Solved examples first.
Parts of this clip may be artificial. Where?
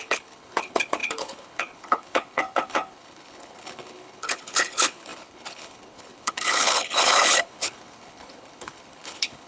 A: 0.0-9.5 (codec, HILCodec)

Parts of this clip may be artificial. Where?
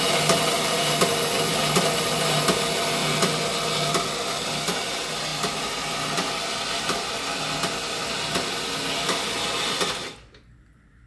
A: none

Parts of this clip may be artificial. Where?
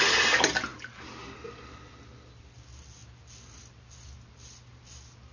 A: none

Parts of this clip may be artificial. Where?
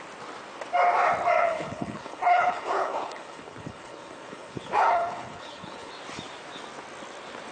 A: 1.4-5.9 (codec, HILCodec)